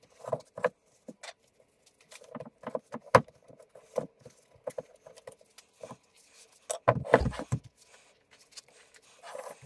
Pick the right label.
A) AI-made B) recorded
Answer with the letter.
B